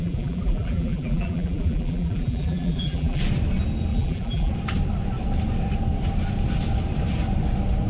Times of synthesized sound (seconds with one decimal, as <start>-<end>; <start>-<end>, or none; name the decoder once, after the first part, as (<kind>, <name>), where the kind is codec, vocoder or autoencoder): 0.0-3.2 (vocoder, BigVGAN v2); 3.9-4.5